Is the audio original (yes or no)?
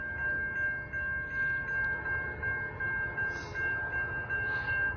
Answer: yes